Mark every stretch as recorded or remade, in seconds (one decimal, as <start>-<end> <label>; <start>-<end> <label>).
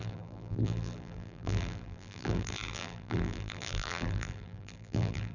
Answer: 0.0-5.3 remade